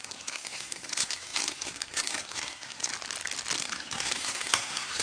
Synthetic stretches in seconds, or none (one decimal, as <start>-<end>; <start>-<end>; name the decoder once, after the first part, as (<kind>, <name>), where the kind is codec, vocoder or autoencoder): 0.0-2.9 (codec, SNAC); 3.6-5.0